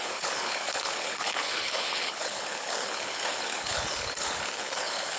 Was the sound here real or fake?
fake